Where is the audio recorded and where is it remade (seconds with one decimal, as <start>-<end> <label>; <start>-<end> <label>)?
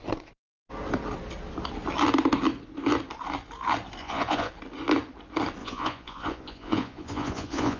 0.0-4.0 recorded; 4.0-4.5 remade; 4.5-5.6 recorded; 5.6-7.8 remade